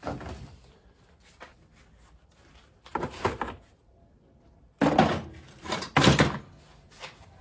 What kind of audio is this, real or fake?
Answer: real